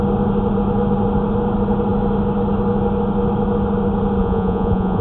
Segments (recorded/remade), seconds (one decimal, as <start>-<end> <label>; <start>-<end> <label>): 0.0-4.2 recorded; 4.2-5.0 remade